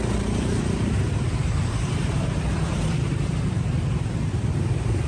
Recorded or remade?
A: remade